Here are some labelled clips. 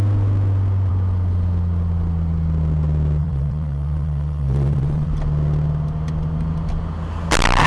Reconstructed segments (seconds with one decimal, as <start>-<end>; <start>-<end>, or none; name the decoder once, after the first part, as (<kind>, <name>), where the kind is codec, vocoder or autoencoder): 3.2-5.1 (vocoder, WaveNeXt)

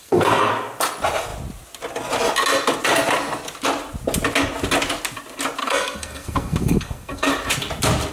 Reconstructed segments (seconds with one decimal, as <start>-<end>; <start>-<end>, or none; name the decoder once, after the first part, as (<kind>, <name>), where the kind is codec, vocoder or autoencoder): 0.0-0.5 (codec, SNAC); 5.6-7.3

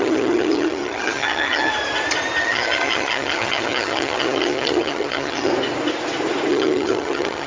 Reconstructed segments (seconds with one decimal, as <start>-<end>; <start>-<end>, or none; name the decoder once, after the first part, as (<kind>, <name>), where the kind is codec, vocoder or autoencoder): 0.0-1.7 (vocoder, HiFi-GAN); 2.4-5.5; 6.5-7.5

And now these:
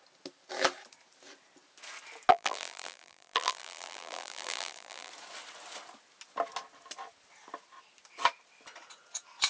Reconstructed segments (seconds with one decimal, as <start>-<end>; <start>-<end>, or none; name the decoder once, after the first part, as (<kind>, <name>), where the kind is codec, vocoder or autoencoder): 2.3-5.1 (vocoder, BigVGAN v2)

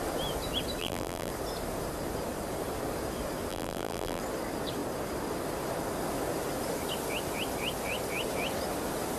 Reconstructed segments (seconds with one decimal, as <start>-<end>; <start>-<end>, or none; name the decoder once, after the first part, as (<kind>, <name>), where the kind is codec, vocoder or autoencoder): 0.8-1.3 (vocoder, BigVGAN v2); 3.5-4.2

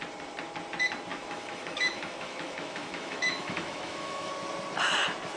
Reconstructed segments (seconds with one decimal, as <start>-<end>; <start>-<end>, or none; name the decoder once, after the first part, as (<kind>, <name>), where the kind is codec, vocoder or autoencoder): 1.1-4.3 (autoencoder, DAC-VAE)